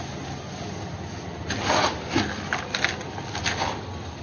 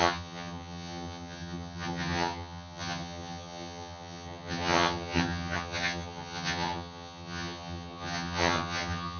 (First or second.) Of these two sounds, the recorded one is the first